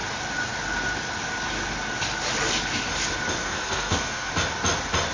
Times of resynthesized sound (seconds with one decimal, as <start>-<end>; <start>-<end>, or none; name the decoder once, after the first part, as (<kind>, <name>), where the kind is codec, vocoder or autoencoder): 3.4-4.3 (codec, SNAC)